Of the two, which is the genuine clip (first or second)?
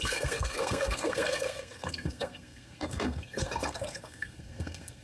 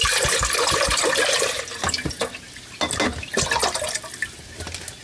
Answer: second